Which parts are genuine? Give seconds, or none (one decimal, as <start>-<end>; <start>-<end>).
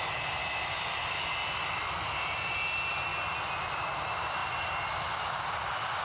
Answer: 0.0-6.0